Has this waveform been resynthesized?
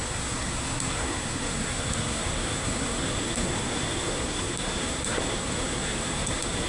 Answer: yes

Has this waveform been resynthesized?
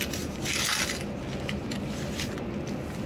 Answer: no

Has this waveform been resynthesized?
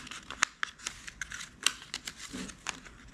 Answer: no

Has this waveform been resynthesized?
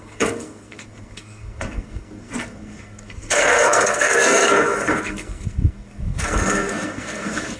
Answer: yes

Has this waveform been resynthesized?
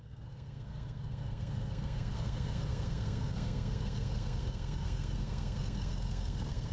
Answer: yes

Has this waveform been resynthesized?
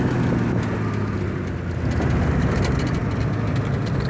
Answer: no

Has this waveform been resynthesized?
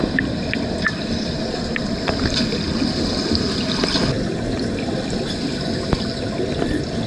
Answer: no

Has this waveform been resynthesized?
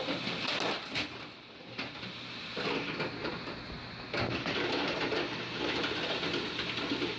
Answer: no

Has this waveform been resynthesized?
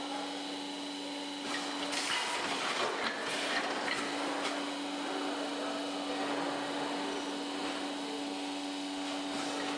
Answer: no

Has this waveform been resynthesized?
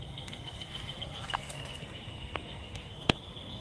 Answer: yes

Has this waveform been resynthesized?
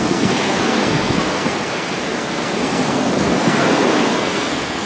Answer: yes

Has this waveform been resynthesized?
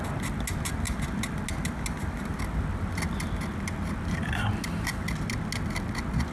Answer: no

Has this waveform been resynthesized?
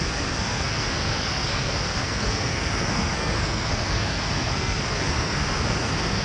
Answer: yes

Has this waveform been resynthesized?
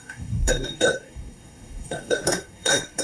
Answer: yes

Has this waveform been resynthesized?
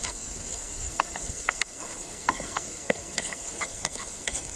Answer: yes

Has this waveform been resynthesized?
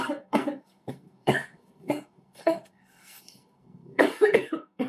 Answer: yes